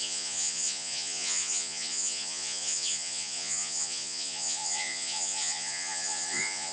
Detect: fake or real fake